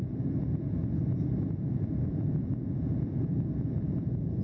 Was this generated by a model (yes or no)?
yes